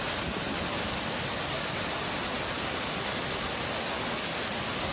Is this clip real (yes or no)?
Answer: yes